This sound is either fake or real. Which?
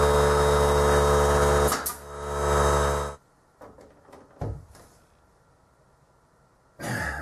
real